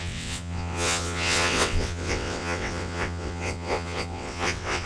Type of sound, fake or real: fake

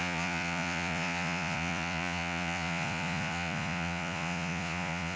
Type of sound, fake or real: fake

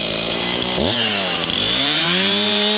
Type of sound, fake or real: fake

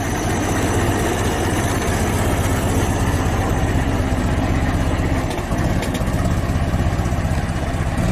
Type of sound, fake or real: real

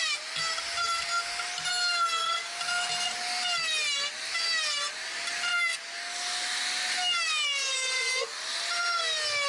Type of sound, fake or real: real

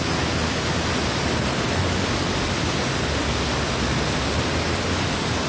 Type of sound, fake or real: real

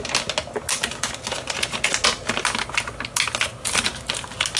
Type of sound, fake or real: real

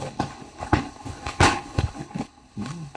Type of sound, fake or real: fake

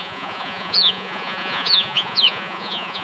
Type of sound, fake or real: fake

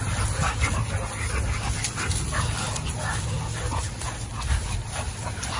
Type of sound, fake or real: real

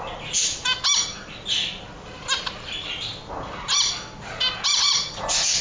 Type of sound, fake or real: real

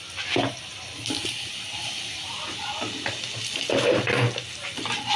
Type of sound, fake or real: real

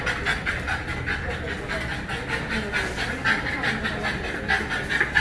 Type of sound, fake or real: real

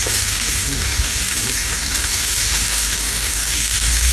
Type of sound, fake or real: fake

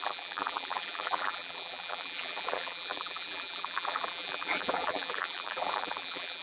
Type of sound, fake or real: fake